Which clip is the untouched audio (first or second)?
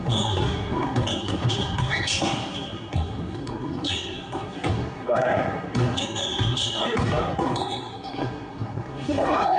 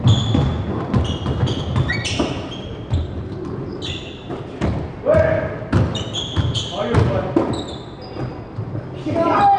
second